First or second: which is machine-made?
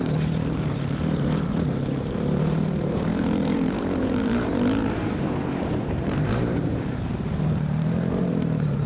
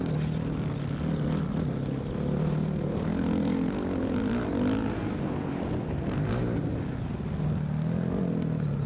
first